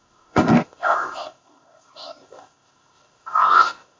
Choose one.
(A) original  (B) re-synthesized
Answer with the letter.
B